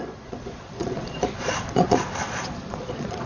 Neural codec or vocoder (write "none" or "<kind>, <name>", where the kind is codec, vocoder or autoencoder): vocoder, Vocos